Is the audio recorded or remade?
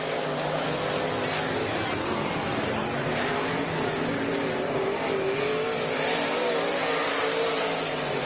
recorded